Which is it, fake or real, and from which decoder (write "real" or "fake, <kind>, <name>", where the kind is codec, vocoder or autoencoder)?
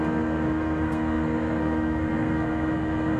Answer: fake, codec, SNAC